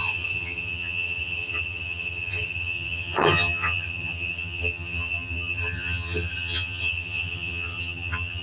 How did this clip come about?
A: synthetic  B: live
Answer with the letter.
A